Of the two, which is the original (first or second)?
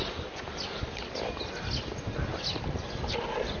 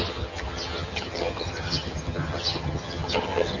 first